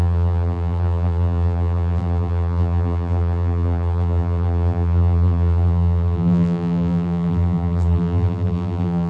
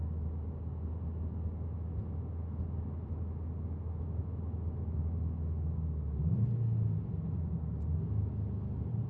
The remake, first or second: first